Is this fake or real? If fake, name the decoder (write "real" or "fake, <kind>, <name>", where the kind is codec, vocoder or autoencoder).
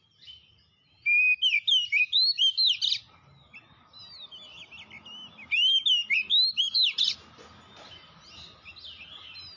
real